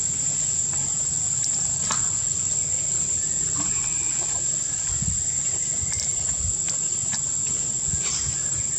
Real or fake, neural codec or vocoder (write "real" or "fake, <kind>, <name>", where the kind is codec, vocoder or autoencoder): real